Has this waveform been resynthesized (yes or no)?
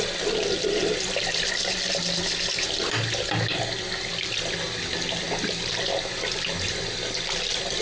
no